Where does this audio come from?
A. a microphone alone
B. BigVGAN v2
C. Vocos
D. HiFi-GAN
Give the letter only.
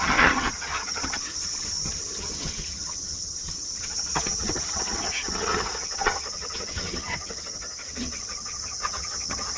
D